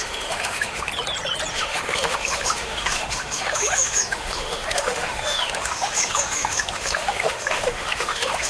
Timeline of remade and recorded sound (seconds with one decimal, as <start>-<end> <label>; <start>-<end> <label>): 0.0-0.9 remade; 0.9-1.5 recorded; 1.5-8.5 remade